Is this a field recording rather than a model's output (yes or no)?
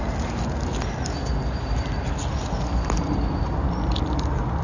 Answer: yes